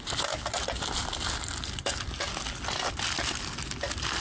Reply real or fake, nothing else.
real